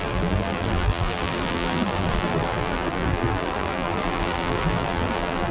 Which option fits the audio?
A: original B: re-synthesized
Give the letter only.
B